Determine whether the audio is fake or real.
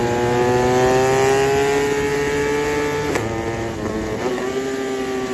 real